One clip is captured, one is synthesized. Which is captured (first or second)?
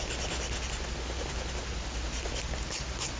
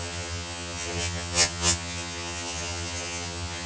first